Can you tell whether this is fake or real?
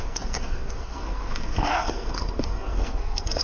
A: fake